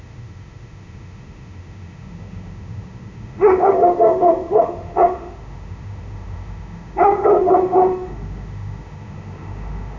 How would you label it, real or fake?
fake